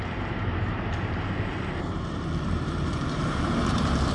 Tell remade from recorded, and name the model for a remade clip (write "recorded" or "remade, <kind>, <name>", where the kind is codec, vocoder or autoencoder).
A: remade, vocoder, BigVGAN v2